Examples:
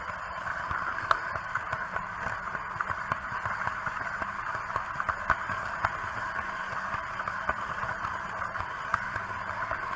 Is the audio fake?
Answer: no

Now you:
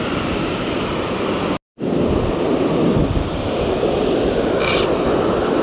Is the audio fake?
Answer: no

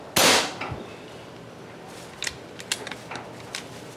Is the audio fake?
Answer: no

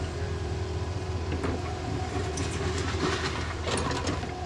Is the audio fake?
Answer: yes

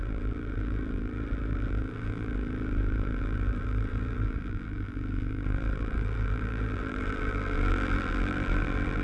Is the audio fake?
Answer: yes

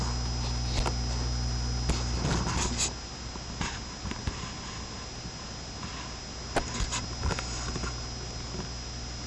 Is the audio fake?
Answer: no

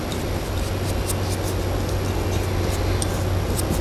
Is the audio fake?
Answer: no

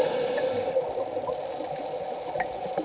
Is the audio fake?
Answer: no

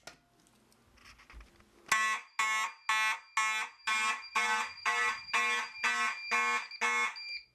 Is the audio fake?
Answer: no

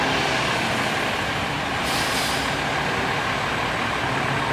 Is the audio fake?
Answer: no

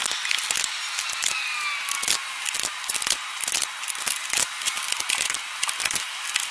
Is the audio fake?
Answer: no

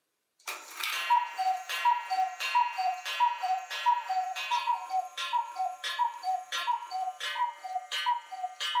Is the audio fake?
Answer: yes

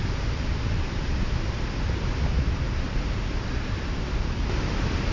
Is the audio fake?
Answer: yes